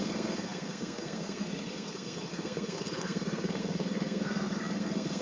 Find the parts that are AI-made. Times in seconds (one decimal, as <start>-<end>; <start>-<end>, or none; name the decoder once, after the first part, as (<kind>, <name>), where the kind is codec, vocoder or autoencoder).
0.0-5.2 (codec, SNAC)